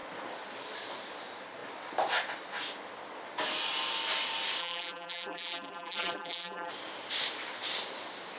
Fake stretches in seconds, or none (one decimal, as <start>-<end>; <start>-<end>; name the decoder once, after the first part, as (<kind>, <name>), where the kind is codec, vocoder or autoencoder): 4.6-6.7 (vocoder, BigVGAN v2)

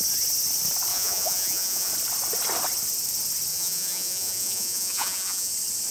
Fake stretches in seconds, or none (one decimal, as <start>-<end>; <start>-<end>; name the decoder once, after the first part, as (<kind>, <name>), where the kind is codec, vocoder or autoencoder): 0.9-1.9 (vocoder, Vocos); 3.5-5.5